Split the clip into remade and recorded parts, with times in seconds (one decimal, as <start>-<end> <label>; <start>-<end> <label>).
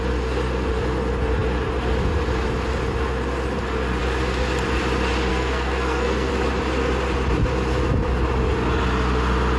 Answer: 0.0-5.3 recorded; 5.3-6.3 remade; 6.3-9.6 recorded